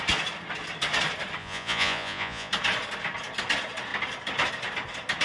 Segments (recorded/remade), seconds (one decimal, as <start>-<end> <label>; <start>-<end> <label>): 0.0-1.4 recorded; 1.4-2.5 remade; 2.5-5.2 recorded